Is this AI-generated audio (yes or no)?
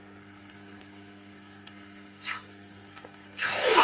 yes